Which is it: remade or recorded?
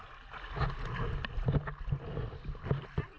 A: recorded